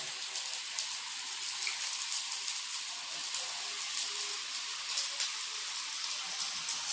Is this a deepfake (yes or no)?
no